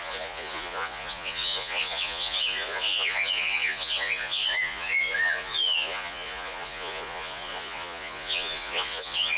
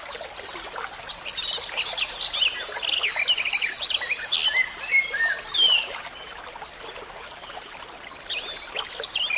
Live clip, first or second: second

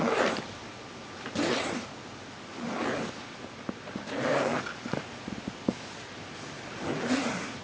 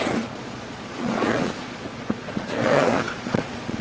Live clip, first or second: first